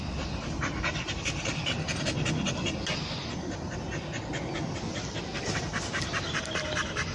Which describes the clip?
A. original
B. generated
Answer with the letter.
A